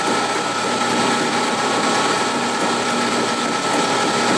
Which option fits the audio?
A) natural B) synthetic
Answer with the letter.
A